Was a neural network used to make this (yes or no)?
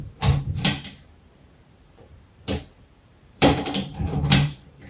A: yes